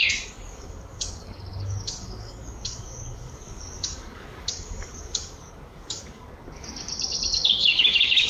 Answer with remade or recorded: remade